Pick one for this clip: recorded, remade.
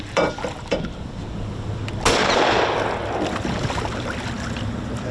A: recorded